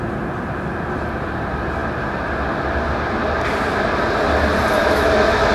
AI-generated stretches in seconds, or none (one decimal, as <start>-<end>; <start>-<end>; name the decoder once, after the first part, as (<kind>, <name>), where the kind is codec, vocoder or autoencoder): 4.8-5.5 (autoencoder, DAC-VAE)